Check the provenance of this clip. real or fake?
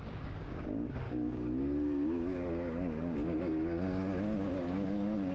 fake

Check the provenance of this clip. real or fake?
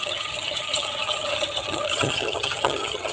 fake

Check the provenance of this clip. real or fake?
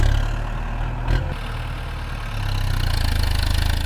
real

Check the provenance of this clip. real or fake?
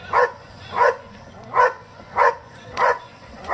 fake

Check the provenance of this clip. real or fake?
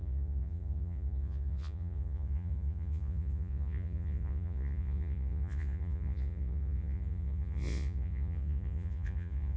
fake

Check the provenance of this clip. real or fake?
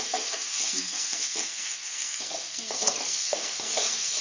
fake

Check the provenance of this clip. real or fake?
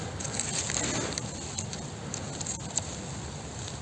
real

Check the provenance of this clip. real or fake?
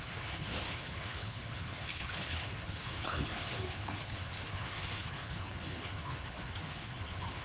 fake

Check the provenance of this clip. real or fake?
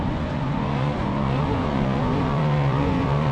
fake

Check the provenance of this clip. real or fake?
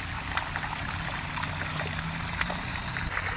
real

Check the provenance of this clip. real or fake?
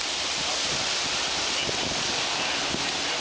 real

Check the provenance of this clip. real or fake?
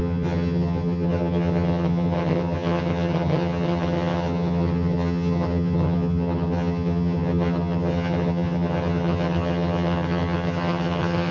fake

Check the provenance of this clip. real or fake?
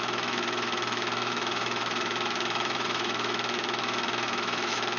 fake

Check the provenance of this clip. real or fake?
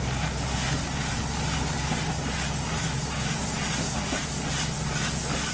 real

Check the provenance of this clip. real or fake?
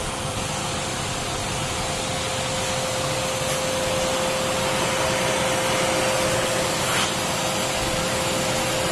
real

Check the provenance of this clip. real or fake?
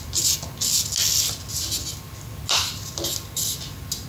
real